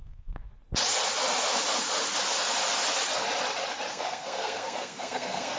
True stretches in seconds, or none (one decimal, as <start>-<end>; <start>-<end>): 0.5-3.9